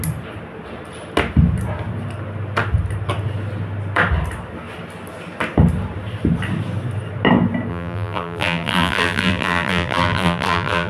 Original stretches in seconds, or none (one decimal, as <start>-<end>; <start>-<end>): 0.0-7.7